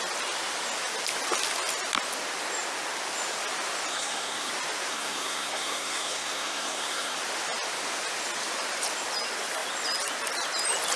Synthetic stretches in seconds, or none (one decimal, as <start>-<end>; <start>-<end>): 3.9-4.5; 4.9-7.2